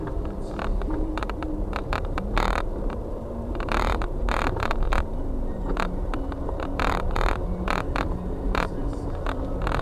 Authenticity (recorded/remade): remade